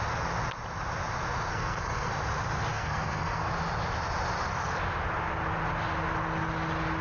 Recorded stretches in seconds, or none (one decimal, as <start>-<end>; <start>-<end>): 0.0-1.5; 2.1-2.7; 3.5-7.0